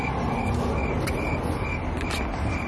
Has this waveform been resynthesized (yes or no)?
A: no